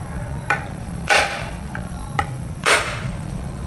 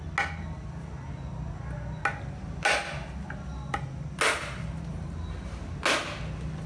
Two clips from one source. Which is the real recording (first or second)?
second